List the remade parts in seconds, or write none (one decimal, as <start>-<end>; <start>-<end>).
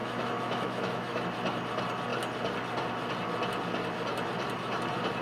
0.0-1.2